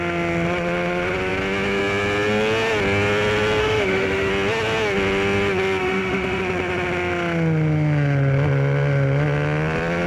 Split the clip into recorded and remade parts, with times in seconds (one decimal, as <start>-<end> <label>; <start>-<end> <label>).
0.0-3.6 recorded; 3.6-4.3 remade; 4.3-5.8 recorded; 5.8-6.4 remade; 6.4-10.1 recorded